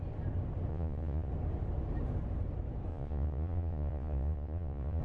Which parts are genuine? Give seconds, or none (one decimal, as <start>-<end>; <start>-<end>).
0.0-0.7; 1.3-2.9